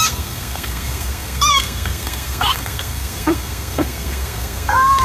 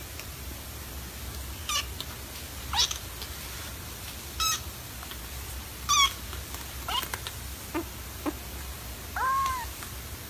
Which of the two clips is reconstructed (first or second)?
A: first